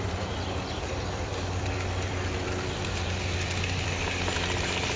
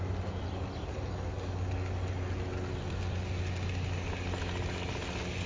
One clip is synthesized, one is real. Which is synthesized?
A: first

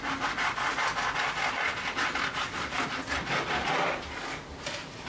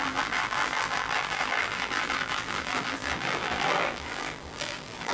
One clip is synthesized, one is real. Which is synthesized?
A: second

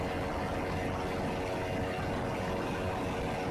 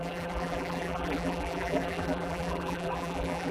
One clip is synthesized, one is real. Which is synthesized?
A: second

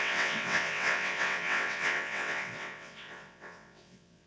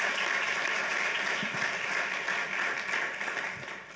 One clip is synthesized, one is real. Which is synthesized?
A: first